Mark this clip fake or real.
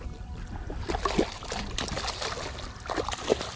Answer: real